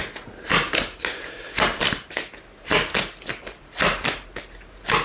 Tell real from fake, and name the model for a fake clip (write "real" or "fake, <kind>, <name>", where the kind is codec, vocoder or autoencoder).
real